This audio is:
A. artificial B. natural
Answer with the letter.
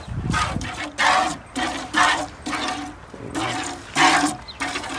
B